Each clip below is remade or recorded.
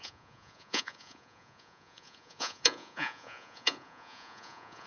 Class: remade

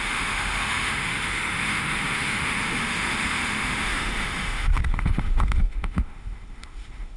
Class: remade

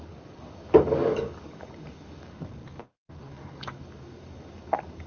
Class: remade